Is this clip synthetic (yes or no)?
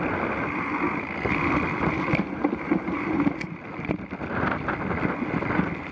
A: no